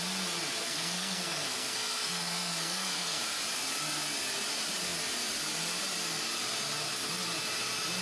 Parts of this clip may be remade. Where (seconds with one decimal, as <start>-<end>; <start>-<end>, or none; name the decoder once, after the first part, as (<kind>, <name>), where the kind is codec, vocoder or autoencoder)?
0.6-3.2 (codec, SNAC)